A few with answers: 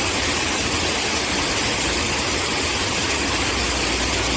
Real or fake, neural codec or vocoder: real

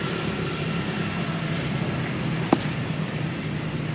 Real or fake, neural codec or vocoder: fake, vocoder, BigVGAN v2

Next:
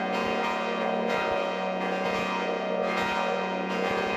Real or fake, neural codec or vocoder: fake, vocoder, Vocos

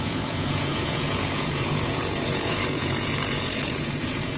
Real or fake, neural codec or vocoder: fake, vocoder, Vocos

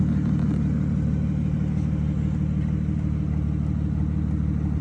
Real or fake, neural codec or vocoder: real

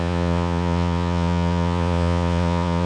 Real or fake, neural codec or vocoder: fake, vocoder, Vocos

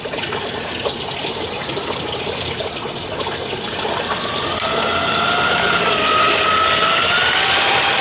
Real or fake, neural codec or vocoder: real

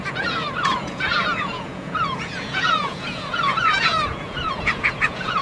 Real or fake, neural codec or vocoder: fake, vocoder, Vocos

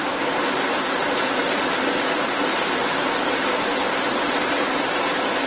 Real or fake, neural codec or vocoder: fake, vocoder, BigVGAN v2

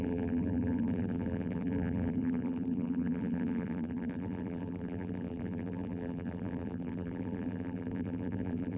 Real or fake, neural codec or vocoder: fake, vocoder, BigVGAN v2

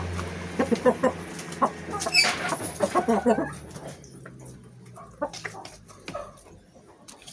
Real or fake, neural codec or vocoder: real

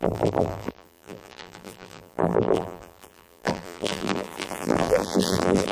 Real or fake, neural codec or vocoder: fake, vocoder, BigVGAN v2